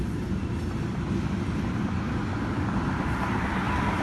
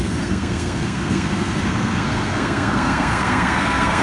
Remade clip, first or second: second